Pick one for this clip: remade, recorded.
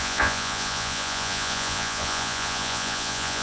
remade